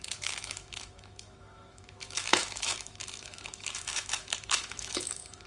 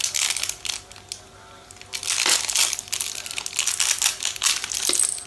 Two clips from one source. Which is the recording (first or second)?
second